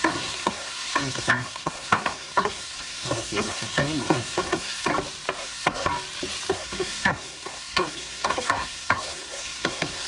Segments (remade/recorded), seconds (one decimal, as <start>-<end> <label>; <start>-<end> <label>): 0.0-4.9 remade; 4.9-5.4 recorded; 5.4-5.9 remade; 5.9-6.5 recorded; 6.5-10.1 remade